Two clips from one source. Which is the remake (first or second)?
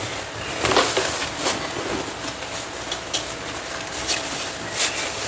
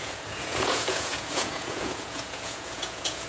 second